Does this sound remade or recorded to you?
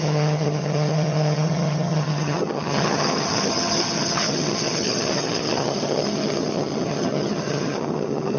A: remade